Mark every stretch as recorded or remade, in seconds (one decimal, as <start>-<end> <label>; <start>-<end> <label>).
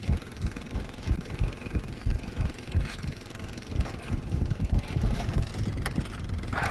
0.0-5.5 remade; 5.5-6.7 recorded